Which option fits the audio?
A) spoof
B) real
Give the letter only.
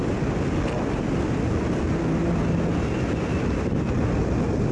B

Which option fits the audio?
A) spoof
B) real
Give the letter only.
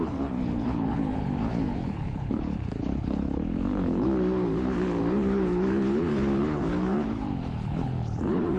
A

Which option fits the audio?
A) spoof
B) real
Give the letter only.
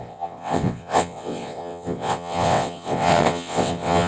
A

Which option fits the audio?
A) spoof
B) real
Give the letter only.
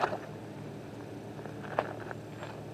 B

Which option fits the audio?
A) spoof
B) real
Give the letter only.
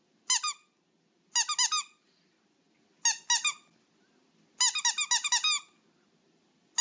B